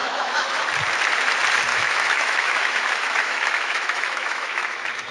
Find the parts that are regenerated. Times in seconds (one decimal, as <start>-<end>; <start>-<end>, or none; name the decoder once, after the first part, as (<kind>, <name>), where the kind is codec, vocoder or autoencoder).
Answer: 0.0-0.6 (autoencoder, DAC-VAE); 1.7-5.1